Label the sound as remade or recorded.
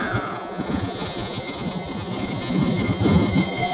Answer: remade